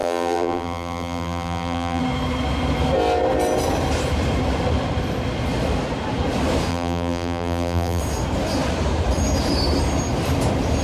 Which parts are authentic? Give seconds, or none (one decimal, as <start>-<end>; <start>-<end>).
2.0-6.7; 8.0-10.8